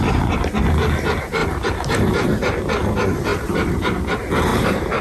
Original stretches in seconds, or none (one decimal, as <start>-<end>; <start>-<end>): 0.0-1.4; 2.1-3.3; 4.0-4.5